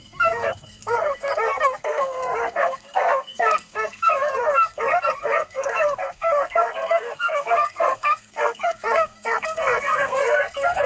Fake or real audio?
fake